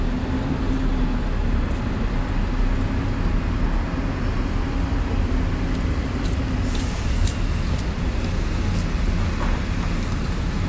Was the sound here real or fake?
real